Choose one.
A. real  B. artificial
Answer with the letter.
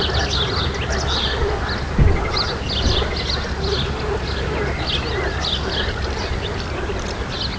A